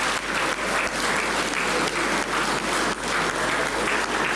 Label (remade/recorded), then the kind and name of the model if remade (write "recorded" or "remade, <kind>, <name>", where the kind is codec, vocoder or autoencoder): recorded